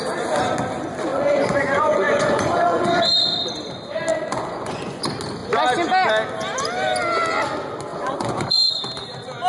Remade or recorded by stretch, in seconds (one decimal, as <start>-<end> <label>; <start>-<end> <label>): 0.0-1.1 recorded; 1.1-3.1 remade; 3.1-4.1 recorded; 4.1-5.0 remade; 5.0-7.9 recorded; 7.9-8.8 remade; 8.8-9.5 recorded